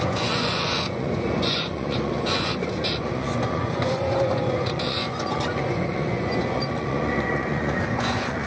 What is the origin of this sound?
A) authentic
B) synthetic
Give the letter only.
B